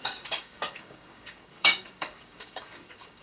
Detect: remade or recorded remade